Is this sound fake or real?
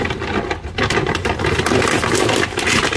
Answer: real